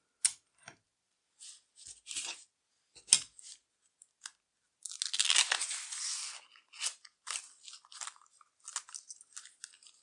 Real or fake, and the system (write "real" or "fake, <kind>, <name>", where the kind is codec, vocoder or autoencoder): real